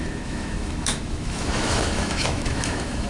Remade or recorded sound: remade